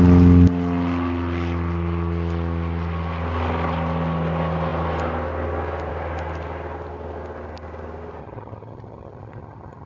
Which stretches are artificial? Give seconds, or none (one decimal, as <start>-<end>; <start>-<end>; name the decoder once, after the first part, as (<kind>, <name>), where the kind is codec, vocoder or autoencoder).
8.2-9.9 (vocoder, HiFi-GAN)

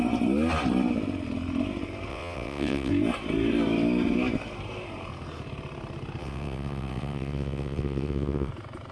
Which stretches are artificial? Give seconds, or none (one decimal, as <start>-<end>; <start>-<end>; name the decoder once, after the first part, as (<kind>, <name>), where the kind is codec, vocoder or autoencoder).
2.1-2.9 (vocoder, WaveNeXt); 6.2-8.5

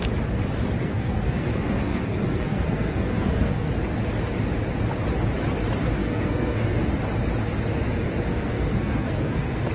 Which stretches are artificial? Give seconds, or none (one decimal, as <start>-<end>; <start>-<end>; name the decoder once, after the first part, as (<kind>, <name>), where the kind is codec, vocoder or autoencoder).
0.8-3.7 (codec, SNAC); 6.0-6.9; 8.3-9.7

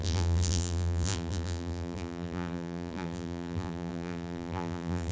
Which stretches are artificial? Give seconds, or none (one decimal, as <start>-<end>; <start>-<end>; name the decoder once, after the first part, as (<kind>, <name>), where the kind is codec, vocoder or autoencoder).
0.0-5.1 (vocoder, BigVGAN v2)

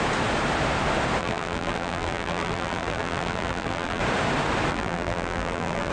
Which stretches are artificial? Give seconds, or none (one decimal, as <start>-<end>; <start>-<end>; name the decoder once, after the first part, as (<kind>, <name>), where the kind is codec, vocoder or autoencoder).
1.2-4.0 (vocoder, BigVGAN v2); 4.7-5.9

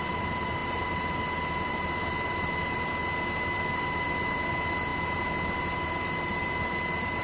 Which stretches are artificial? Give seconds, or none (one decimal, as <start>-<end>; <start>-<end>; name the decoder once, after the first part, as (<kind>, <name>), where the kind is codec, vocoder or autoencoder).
none